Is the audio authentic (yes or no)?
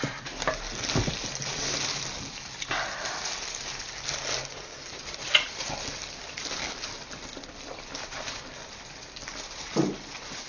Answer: no